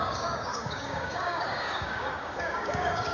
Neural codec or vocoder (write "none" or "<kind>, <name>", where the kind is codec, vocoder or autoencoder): codec, DAC